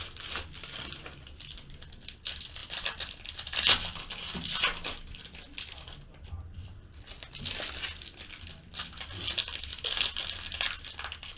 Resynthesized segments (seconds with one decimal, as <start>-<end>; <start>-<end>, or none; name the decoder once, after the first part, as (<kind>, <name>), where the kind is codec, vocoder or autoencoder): 2.6-7.7 (vocoder, BigVGAN v2); 9.7-10.3